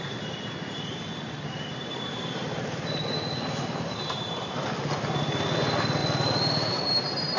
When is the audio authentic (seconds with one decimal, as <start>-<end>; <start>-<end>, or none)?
0.0-7.4